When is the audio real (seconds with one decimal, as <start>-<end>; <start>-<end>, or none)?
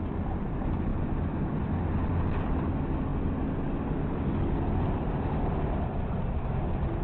0.0-7.0